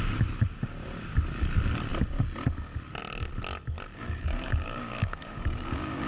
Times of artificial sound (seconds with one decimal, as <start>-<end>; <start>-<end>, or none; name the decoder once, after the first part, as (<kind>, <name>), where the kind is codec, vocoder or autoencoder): 3.9-6.1 (codec, DAC)